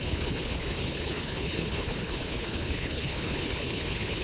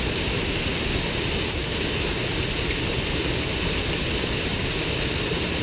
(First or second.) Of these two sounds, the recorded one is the second